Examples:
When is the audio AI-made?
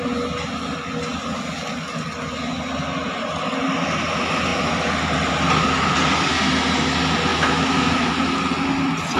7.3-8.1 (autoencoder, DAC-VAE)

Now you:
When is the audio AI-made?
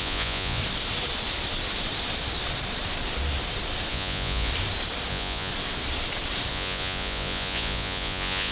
0.0-0.6 (vocoder, Vocos); 3.9-4.5; 5.1-5.5; 6.5-8.5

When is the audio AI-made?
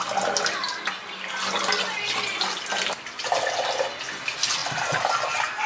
none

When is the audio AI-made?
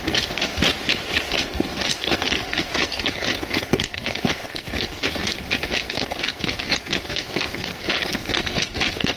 0.0-0.6 (codec, SNAC); 1.3-9.2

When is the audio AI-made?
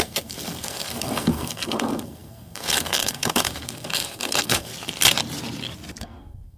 0.0-4.7 (codec, SNAC); 6.0-6.6